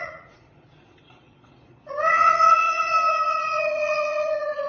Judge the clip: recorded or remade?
remade